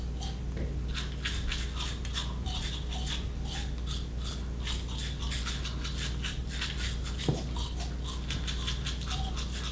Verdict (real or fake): real